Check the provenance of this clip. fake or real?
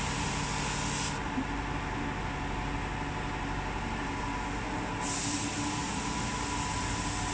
real